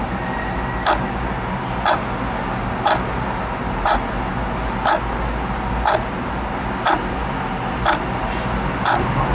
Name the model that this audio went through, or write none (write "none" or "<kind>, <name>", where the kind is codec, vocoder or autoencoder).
none